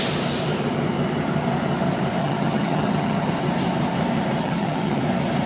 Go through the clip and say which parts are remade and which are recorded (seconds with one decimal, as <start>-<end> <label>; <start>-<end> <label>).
0.0-2.2 recorded; 2.2-3.3 remade; 3.3-4.4 recorded; 4.4-5.0 remade; 5.0-5.5 recorded